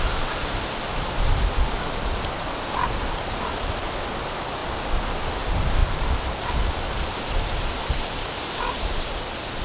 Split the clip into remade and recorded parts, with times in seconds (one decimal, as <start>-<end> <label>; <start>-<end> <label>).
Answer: 0.0-5.8 recorded; 5.8-6.5 remade; 6.5-9.6 recorded